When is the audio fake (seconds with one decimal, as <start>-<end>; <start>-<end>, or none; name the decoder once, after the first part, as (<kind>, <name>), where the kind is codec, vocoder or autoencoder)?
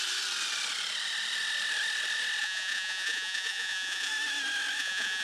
2.4-4.1 (vocoder, Vocos); 4.8-5.2